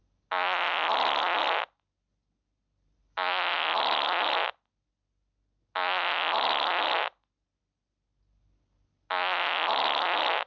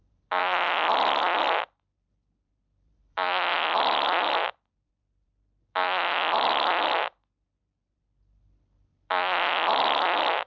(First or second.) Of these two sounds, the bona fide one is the first